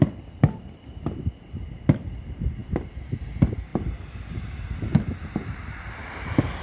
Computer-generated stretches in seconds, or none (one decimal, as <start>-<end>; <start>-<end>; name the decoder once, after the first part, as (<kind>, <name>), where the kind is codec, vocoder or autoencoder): none